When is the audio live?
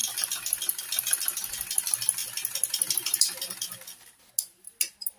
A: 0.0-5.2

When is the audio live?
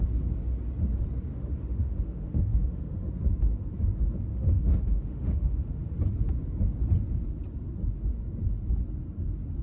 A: 0.0-1.3; 3.1-4.3; 5.8-9.6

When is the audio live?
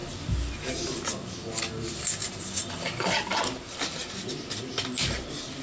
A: 0.0-2.2; 3.1-5.6